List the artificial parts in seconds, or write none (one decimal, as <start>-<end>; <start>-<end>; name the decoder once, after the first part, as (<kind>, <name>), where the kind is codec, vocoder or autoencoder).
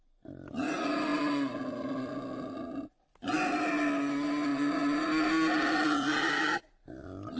none